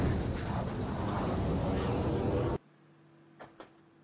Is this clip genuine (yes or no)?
yes